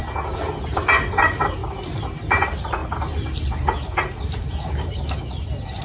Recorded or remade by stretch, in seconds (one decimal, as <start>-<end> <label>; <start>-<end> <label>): 0.0-5.8 recorded